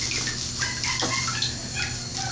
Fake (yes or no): no